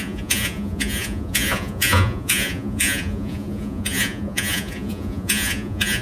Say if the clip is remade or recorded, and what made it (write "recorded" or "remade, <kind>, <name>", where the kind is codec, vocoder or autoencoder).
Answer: remade, vocoder, Vocos